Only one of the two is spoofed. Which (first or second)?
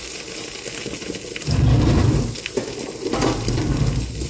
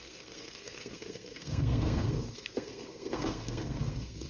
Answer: second